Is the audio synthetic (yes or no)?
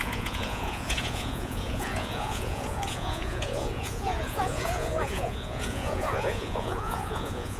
yes